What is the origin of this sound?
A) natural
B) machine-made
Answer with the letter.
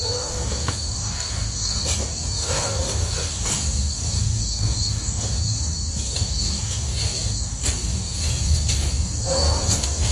B